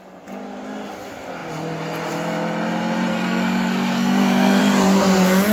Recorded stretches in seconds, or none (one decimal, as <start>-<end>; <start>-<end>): 0.0-3.1; 4.6-5.5